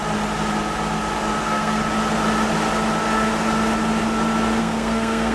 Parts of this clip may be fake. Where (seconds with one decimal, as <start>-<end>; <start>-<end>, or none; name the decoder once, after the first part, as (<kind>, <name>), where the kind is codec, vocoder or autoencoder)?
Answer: 1.4-1.8 (codec, SNAC); 4.6-5.3